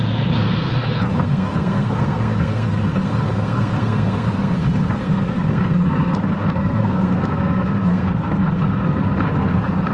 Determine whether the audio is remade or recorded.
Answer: remade